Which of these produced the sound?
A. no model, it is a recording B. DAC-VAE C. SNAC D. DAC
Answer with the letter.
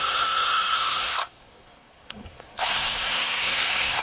C